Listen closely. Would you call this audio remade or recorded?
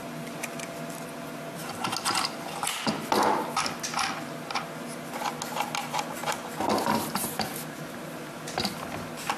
recorded